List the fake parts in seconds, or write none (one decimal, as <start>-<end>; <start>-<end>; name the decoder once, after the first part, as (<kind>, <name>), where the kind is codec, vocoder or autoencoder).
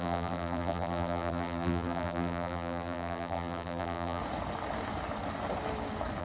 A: 0.0-4.2 (vocoder, BigVGAN v2)